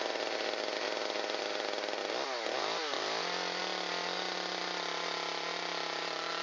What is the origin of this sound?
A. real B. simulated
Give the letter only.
A